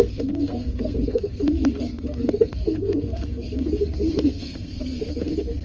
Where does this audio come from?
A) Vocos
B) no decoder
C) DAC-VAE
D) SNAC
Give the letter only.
D